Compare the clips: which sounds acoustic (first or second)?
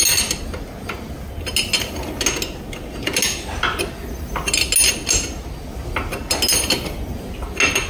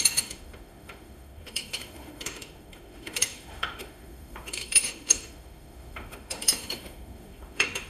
first